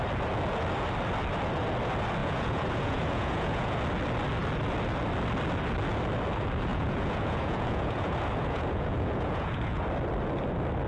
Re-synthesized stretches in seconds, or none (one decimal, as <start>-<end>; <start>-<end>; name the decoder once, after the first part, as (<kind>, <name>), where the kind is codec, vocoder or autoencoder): 2.2-3.8 (vocoder, Vocos); 6.7-9.8